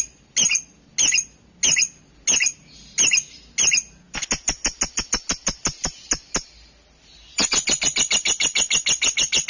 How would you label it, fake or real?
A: real